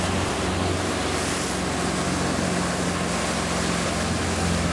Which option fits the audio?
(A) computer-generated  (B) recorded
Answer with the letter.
B